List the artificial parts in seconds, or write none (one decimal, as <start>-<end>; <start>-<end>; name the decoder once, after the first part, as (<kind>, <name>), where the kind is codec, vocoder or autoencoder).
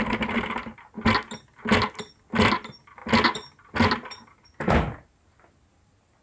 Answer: none